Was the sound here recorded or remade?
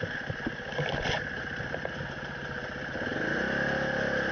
recorded